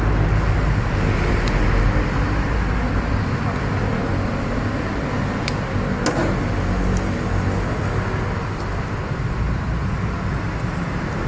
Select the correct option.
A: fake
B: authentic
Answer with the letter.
B